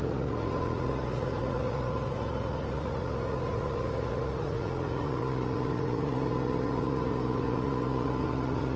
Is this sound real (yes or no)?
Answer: no